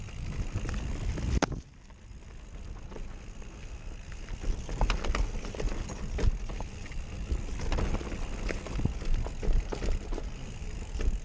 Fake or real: real